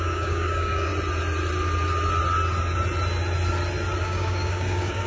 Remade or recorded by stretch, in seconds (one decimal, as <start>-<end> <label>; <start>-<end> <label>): 0.0-0.9 remade; 0.9-4.0 recorded; 4.0-5.1 remade